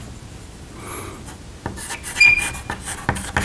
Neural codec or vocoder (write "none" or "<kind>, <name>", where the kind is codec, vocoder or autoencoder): none